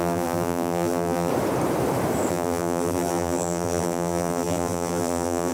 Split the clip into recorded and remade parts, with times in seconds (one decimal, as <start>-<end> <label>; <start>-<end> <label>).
0.0-1.3 remade; 1.3-2.3 recorded; 2.3-5.5 remade